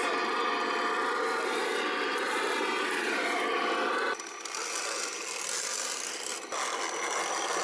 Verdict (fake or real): real